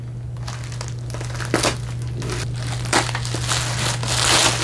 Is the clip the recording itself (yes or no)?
yes